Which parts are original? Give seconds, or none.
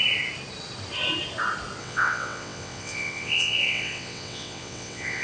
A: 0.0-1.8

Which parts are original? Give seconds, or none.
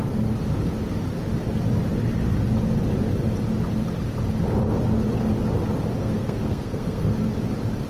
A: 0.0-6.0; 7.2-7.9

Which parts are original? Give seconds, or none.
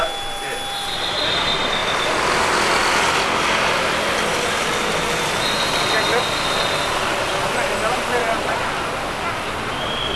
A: 0.0-10.2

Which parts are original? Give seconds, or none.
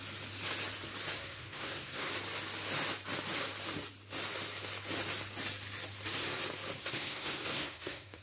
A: 0.0-1.2; 2.1-6.8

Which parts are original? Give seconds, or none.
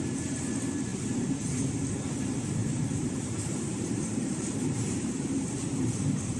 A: 0.0-2.6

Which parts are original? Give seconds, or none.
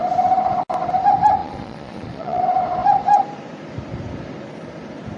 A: 0.0-1.4; 2.4-5.2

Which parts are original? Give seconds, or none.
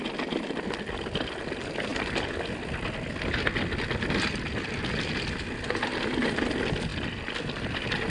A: 0.0-8.1